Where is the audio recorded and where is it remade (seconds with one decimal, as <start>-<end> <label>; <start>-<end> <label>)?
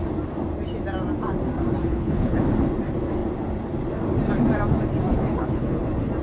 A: 0.0-1.8 recorded; 1.8-2.4 remade; 2.4-5.1 recorded; 5.1-5.8 remade; 5.8-6.2 recorded